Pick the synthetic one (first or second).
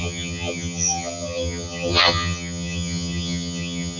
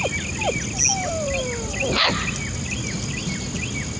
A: first